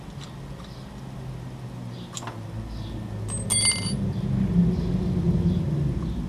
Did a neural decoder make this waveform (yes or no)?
no